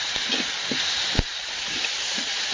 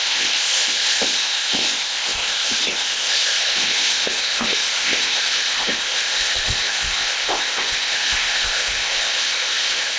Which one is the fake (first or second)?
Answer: second